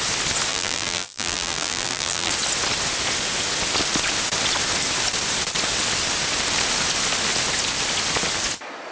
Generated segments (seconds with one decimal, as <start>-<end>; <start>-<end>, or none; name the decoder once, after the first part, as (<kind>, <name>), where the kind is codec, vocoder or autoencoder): 0.5-2.3 (vocoder, BigVGAN v2)

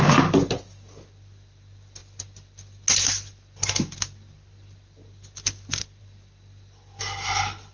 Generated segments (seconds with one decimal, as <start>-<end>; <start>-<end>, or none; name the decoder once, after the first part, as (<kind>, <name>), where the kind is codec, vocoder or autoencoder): none

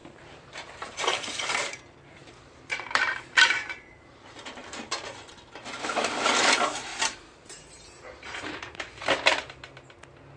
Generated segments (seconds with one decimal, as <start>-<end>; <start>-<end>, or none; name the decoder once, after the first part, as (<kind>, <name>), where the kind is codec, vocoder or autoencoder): 0.0-1.8 (vocoder, BigVGAN v2); 2.2-5.3; 6.9-9.0

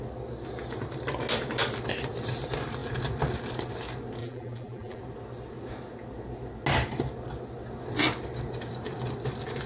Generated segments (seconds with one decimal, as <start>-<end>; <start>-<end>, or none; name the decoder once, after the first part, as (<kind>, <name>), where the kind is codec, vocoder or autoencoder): 4.2-5.0 (vocoder, BigVGAN v2)

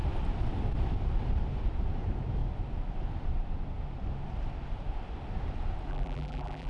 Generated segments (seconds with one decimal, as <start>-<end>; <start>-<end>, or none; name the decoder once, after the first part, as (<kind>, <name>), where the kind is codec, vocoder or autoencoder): 5.9-6.7 (vocoder, BigVGAN v2)

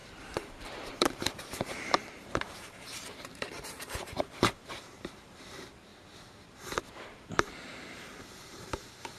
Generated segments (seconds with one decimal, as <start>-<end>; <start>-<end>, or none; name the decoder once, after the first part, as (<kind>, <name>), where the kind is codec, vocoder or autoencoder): 0.0-5.9 (vocoder, BigVGAN v2); 6.8-9.2

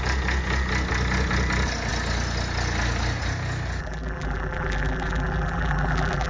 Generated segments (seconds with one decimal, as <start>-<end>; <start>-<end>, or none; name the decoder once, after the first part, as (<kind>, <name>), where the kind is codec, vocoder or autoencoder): 3.8-6.3 (vocoder, BigVGAN v2)